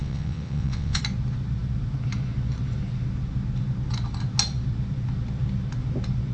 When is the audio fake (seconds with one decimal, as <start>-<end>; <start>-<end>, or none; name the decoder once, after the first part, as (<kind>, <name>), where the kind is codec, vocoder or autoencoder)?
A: 0.0-1.0 (vocoder, WaveNeXt)